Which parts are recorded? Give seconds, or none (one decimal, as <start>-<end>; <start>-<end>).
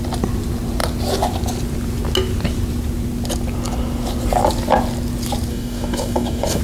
0.0-5.5